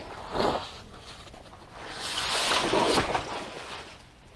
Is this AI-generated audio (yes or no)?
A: yes